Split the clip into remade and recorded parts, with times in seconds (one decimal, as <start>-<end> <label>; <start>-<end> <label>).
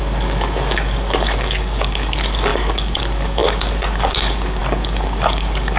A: 0.0-5.8 remade